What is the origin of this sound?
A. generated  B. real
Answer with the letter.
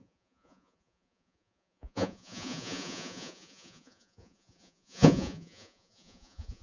A